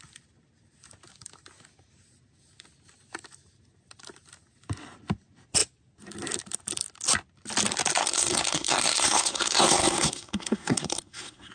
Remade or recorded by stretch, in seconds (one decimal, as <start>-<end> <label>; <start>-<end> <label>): 0.0-8.0 recorded; 8.0-11.5 remade